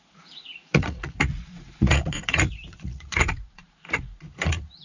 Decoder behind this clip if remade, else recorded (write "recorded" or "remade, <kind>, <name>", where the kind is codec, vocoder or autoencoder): remade, vocoder, Vocos